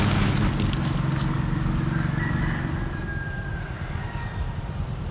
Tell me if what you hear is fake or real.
real